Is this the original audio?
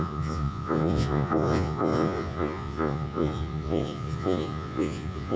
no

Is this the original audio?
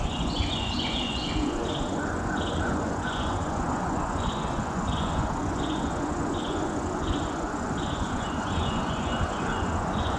no